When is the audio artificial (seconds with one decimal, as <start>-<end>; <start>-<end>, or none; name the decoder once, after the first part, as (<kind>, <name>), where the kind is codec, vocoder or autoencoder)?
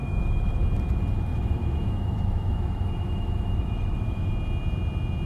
0.0-0.6 (autoencoder, DAC-VAE); 1.3-4.3